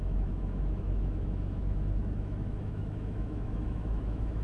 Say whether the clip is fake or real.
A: fake